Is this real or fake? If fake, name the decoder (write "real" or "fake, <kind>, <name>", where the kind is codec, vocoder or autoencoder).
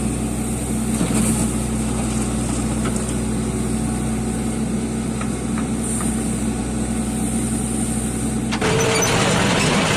real